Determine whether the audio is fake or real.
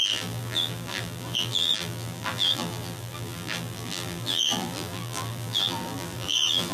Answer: fake